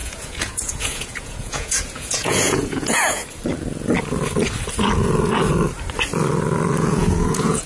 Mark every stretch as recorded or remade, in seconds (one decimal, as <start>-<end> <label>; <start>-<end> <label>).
0.0-3.2 remade; 3.2-6.8 recorded; 6.8-7.7 remade

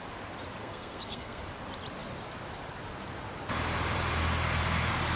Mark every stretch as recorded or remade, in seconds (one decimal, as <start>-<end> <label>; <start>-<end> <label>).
0.0-0.6 recorded; 0.6-1.4 remade; 1.4-5.2 recorded

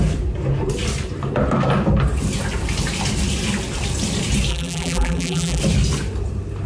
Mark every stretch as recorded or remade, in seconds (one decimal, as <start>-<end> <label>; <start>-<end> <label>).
0.0-4.5 recorded; 4.5-5.6 remade; 5.6-6.7 recorded

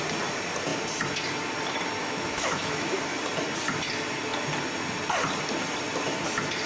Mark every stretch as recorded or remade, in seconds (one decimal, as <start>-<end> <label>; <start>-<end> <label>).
0.0-2.0 recorded; 2.0-2.9 remade; 2.9-6.7 recorded